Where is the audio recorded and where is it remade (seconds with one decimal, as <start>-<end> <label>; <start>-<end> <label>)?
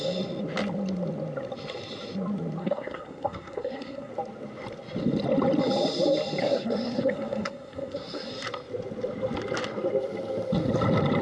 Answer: 0.0-2.6 recorded; 2.6-4.1 remade; 4.1-6.4 recorded; 6.4-8.3 remade; 8.3-11.2 recorded